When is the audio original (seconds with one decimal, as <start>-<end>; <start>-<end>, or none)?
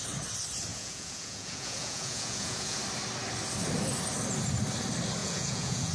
0.0-0.7; 2.8-5.2